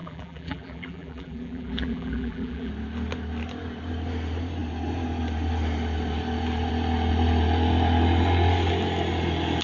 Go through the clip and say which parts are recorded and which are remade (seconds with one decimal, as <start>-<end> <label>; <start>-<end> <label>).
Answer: 0.0-2.7 remade; 2.7-9.6 recorded